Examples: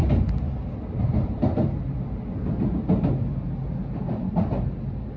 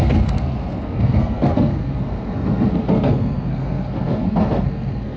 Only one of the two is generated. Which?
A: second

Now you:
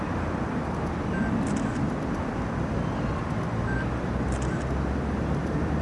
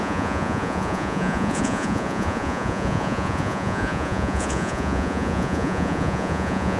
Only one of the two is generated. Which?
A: second